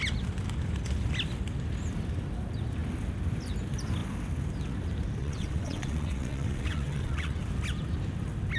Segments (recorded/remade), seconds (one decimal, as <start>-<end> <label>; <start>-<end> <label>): 0.0-5.2 recorded; 5.2-7.4 remade; 7.4-8.6 recorded